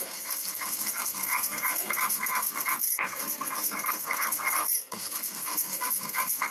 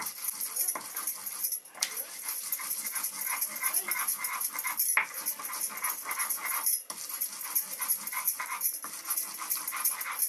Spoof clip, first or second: first